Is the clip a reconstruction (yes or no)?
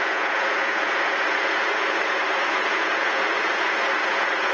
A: yes